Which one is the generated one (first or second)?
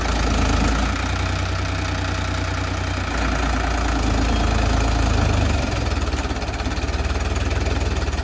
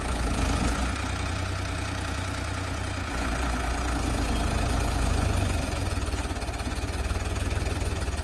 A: second